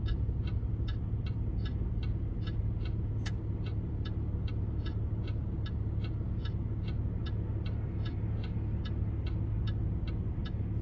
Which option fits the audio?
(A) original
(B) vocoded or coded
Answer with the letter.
A